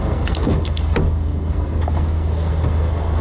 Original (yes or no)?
no